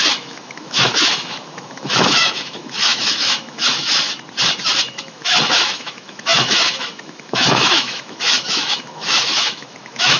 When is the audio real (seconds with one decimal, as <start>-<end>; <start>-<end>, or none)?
3.9-4.8